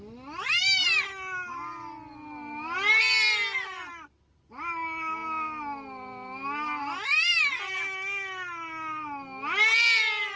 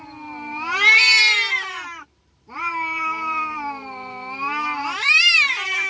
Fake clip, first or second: second